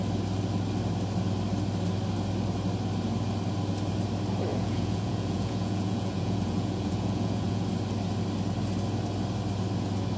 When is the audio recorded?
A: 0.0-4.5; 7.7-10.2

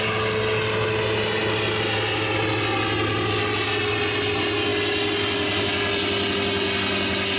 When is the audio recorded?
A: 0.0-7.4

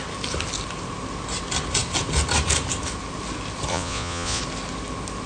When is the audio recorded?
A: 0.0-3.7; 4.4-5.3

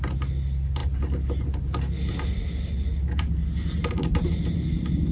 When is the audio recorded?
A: 0.0-5.1